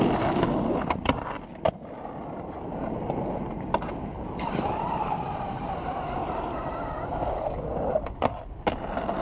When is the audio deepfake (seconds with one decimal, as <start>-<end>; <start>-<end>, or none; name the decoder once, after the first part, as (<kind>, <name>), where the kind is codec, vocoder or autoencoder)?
none